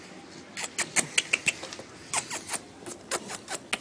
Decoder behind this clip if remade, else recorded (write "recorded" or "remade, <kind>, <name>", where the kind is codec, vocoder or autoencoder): recorded